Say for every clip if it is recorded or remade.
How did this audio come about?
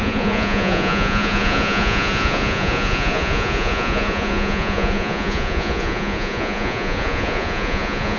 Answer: remade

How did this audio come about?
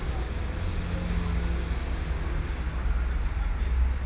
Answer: recorded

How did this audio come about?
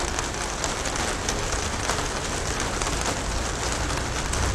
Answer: recorded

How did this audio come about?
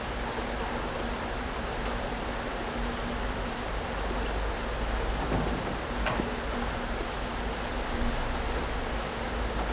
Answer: recorded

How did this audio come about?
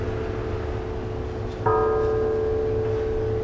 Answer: recorded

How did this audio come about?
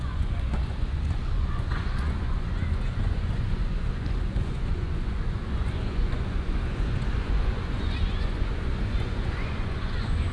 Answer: remade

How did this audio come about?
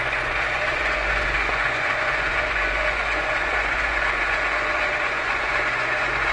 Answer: remade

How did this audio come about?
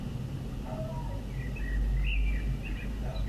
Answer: recorded